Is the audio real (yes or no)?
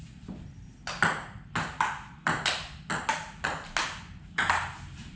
yes